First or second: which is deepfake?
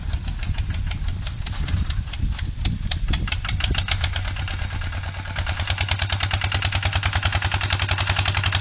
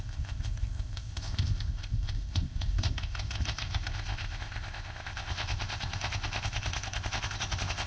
second